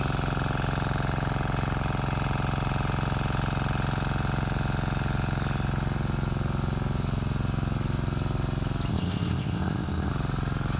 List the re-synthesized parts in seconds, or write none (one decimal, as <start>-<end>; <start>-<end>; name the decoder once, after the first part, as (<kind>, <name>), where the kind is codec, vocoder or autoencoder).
8.9-10.1 (codec, ZipCodec)